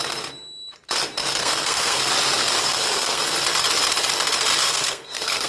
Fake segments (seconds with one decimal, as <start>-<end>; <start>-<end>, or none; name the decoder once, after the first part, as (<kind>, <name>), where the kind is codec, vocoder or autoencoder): 1.4-2.1 (codec, SNAC); 2.6-3.2; 4.6-5.5